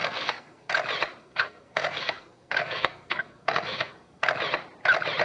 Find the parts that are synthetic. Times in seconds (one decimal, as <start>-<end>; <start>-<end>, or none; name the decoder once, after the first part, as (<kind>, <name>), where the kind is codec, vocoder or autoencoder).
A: 0.0-0.7 (codec, SNAC); 1.2-4.3